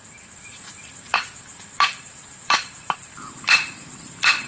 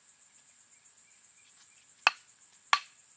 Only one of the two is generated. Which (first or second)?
first